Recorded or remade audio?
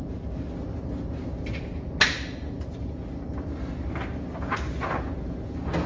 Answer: recorded